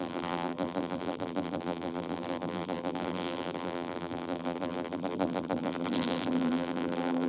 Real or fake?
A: fake